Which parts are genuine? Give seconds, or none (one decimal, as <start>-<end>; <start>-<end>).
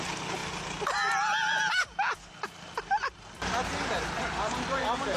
0.0-5.2